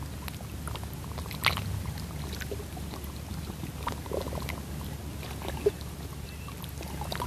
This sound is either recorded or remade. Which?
recorded